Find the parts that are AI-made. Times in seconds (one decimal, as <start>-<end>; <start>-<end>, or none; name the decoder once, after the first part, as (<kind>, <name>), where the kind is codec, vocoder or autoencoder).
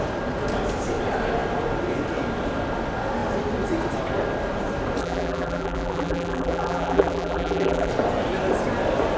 5.0-7.9 (vocoder, BigVGAN v2)